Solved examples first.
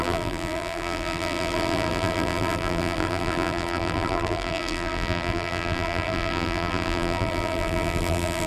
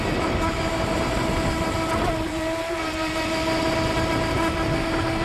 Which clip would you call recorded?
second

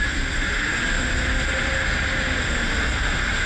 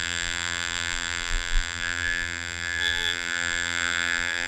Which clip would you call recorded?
first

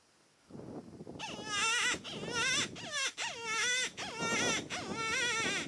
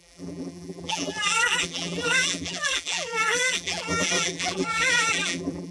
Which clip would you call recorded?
first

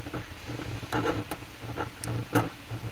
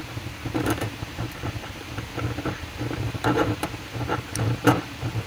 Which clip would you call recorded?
first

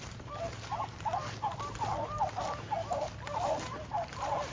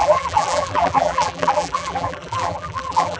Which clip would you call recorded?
first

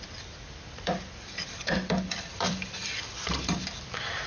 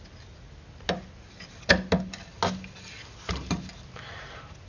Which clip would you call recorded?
second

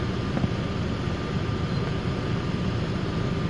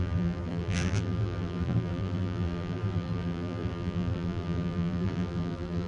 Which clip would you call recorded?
first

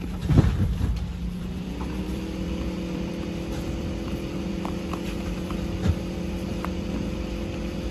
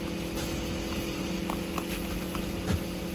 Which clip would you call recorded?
second